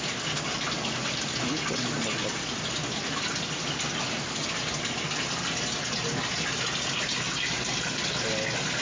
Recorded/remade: recorded